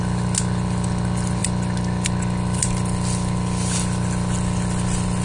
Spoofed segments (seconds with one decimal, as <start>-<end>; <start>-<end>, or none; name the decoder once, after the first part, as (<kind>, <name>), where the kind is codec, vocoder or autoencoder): none